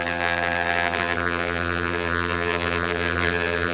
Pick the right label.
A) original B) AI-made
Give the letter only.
B